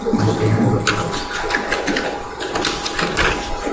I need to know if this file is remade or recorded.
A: recorded